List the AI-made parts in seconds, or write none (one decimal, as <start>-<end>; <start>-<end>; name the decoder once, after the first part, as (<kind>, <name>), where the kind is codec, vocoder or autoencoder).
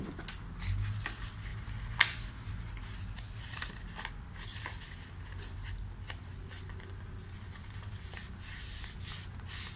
none